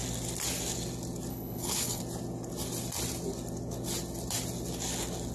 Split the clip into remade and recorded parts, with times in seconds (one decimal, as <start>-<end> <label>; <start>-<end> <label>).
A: 0.0-1.3 recorded; 1.3-2.0 remade; 2.0-5.3 recorded